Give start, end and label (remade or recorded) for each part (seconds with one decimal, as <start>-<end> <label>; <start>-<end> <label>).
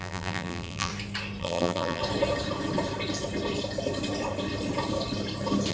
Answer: 0.0-0.9 remade; 0.9-1.4 recorded; 1.4-2.0 remade; 2.0-5.7 recorded